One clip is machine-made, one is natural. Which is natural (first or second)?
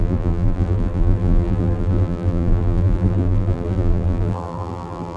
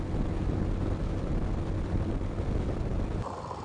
second